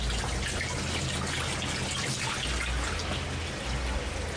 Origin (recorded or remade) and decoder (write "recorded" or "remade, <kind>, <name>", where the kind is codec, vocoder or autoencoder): recorded